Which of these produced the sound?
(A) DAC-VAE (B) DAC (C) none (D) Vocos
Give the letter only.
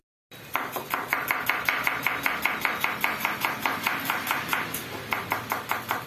C